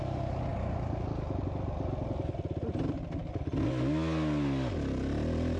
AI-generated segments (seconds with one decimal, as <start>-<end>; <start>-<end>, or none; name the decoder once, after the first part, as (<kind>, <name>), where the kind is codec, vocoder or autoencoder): none